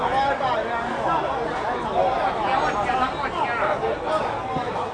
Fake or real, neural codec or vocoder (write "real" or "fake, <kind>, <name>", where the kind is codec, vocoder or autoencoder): real